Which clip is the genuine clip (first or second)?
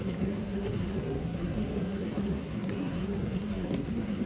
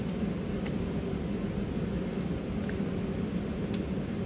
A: second